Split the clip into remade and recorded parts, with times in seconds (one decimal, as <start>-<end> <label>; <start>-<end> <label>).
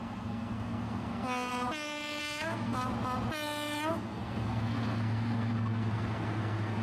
0.0-1.5 remade; 1.5-2.2 recorded; 2.2-2.8 remade; 2.8-3.9 recorded; 3.9-6.8 remade